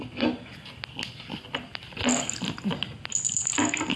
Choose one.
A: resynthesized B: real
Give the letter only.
B